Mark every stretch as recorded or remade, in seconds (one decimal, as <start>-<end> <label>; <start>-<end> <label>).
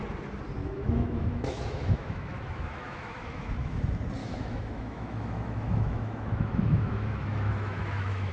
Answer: 0.0-0.6 recorded; 0.6-3.8 remade; 3.8-4.2 recorded; 4.2-8.3 remade